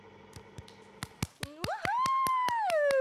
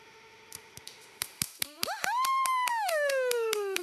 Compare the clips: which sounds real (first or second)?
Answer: first